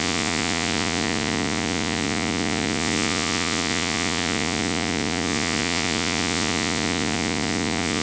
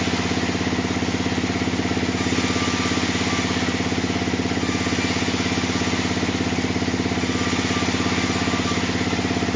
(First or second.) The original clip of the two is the second